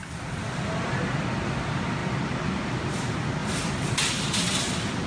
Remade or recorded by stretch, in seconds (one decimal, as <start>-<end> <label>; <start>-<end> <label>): 0.0-5.1 recorded